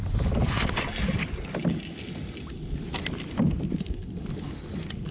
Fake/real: real